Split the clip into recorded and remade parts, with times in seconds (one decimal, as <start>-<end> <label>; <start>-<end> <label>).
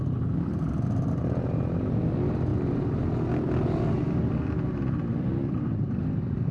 0.0-6.5 recorded